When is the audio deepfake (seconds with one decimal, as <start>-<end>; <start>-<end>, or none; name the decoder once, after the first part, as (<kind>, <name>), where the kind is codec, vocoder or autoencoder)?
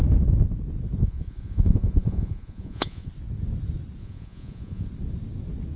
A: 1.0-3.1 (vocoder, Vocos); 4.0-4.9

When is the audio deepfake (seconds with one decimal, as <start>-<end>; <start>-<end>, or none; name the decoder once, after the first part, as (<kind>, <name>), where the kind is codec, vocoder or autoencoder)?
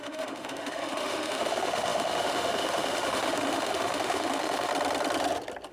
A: 0.0-4.7 (autoencoder, DAC-VAE)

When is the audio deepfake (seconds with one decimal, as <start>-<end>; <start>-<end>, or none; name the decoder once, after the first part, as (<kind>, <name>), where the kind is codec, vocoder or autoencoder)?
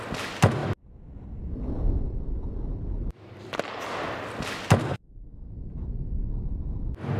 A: 4.8-5.5 (codec, SNAC)